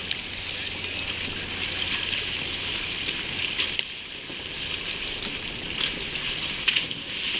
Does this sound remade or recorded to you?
recorded